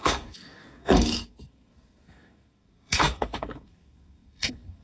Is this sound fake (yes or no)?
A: yes